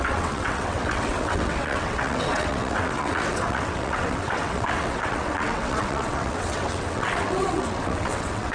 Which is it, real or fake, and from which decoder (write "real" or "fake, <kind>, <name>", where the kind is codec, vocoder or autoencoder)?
fake, vocoder, WaveNeXt